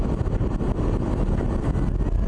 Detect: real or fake real